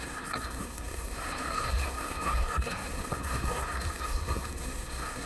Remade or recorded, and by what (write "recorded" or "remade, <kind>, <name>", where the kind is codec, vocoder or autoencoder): remade, codec, SNAC